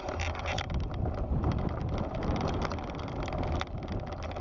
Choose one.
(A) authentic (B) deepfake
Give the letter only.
A